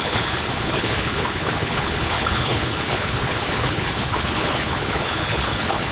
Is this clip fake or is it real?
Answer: fake